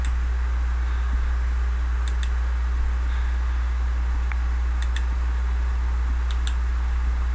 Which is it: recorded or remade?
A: recorded